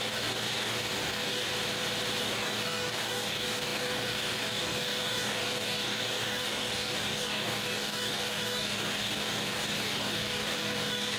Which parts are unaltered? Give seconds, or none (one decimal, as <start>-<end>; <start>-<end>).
1.5-2.2